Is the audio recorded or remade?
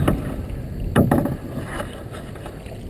recorded